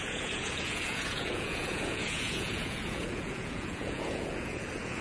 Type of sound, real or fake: fake